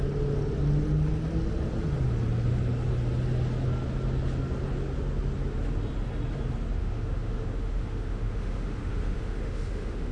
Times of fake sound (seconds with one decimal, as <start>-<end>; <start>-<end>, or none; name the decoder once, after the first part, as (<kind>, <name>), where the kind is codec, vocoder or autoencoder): 6.8-10.1 (autoencoder, DAC-VAE)